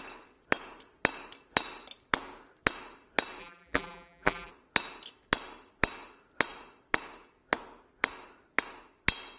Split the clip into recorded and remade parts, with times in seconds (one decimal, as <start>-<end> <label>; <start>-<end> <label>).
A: 0.0-3.4 recorded; 3.4-4.5 remade; 4.5-9.4 recorded